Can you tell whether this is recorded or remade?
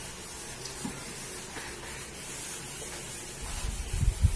recorded